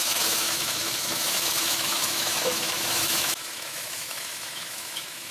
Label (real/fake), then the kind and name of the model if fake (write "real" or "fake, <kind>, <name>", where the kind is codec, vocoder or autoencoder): fake, autoencoder, DAC-VAE